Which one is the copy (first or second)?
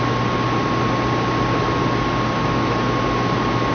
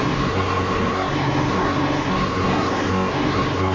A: second